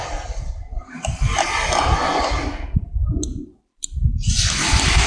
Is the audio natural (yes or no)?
no